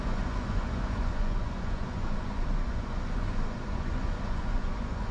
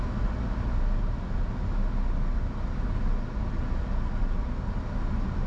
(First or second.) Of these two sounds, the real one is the second